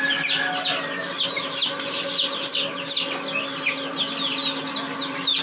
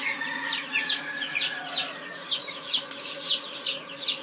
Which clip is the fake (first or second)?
second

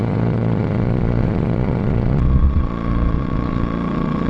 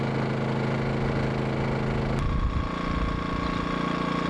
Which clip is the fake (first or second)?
first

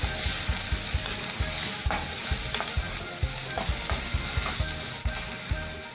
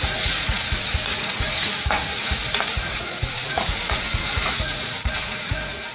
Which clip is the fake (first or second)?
second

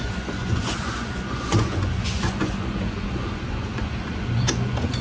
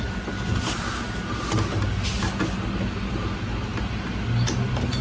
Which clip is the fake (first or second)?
first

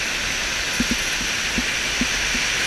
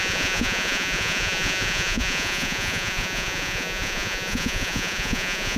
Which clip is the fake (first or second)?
second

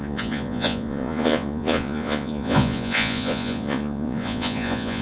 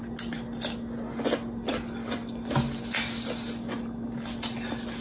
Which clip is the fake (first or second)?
first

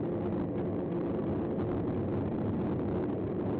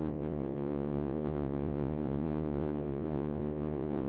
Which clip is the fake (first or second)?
second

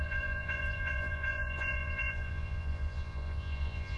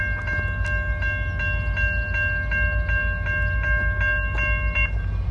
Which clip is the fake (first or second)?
first